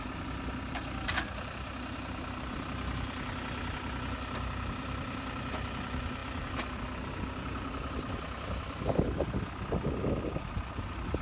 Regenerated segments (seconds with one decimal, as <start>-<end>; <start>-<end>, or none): none